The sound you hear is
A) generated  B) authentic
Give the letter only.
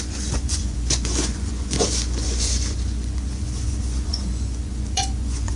A